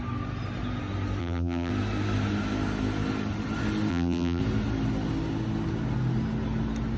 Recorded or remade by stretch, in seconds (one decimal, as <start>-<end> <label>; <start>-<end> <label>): 0.0-1.2 recorded; 1.2-1.7 remade; 1.7-3.9 recorded; 3.9-4.4 remade; 4.4-7.0 recorded